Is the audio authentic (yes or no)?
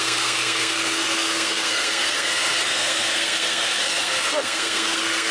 no